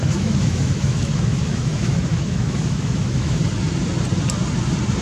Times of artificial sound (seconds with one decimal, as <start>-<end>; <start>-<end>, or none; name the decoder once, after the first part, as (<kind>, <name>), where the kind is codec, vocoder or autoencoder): 0.0-3.4 (autoencoder, DAC-VAE)